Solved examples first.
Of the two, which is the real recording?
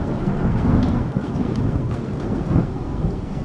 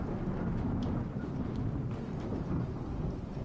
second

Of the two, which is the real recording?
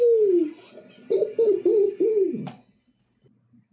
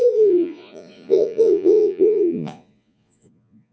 first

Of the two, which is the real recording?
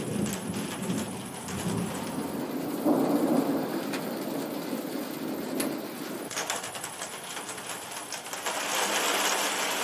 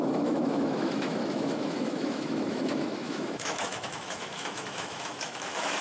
first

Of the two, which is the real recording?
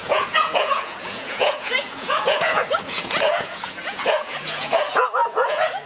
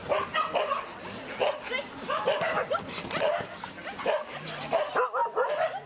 second